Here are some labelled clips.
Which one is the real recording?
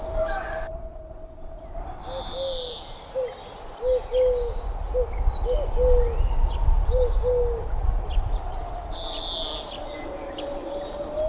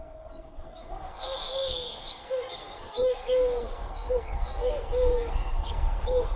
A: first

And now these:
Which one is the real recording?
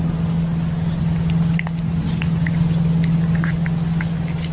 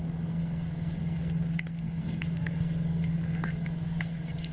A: first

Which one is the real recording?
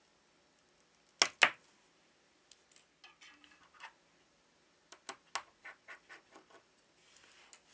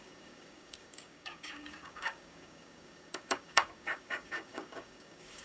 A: first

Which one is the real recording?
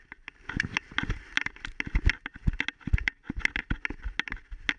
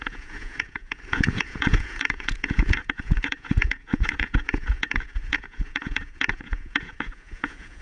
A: first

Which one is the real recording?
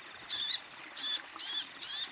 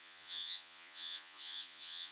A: first